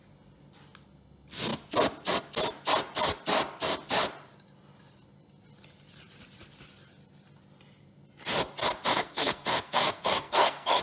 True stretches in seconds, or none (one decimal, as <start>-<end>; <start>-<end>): 0.0-8.9